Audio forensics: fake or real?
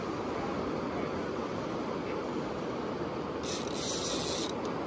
real